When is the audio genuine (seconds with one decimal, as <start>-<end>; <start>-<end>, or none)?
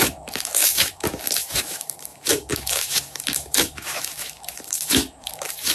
none